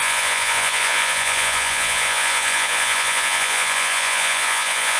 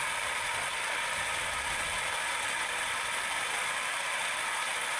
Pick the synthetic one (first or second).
first